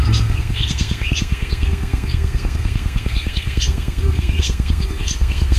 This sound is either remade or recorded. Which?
remade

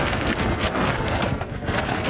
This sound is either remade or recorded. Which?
remade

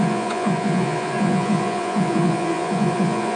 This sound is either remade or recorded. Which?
remade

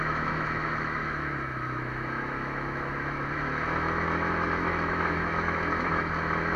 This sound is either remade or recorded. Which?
remade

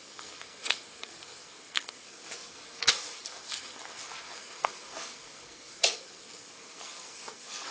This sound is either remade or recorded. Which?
remade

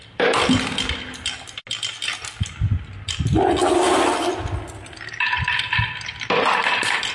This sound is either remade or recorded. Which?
recorded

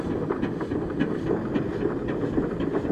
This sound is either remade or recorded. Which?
recorded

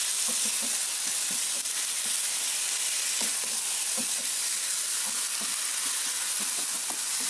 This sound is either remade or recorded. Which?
recorded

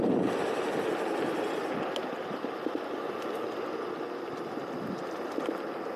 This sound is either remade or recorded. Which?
recorded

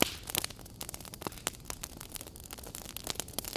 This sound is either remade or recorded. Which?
recorded